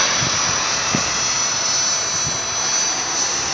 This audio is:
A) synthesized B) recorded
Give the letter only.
B